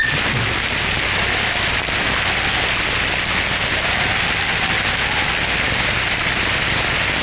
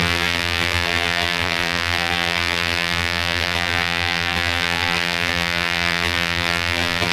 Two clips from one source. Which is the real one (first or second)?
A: first